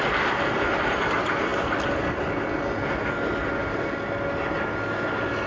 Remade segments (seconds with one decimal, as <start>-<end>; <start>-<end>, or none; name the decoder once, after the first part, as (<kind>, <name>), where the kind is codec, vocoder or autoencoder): none